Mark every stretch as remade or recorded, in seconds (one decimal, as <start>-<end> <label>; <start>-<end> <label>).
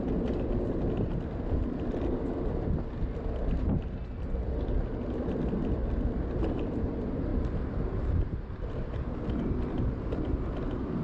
0.0-11.0 recorded